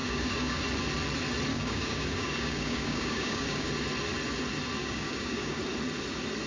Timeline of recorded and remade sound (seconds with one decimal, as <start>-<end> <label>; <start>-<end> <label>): 0.0-0.6 remade; 0.6-1.5 recorded; 1.5-3.7 remade; 3.7-4.8 recorded; 4.8-5.6 remade; 5.6-6.5 recorded